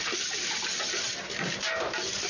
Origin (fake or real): real